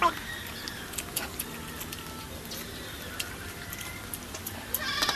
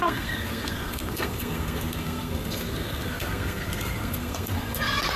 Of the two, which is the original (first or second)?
first